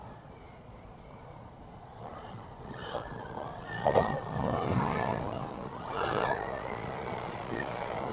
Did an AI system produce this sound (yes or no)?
yes